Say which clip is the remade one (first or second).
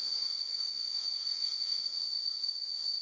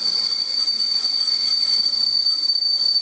first